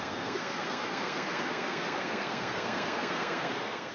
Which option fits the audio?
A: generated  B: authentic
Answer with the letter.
A